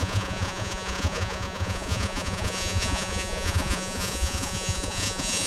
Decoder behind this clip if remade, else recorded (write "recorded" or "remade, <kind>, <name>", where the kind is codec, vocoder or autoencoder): remade, vocoder, Vocos